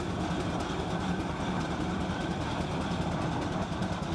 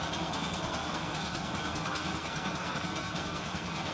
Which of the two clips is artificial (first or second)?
second